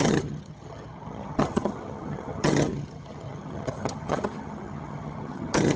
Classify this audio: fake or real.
fake